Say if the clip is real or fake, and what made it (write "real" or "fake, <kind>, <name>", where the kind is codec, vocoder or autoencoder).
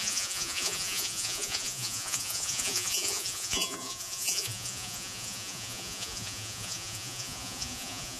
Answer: fake, vocoder, Vocos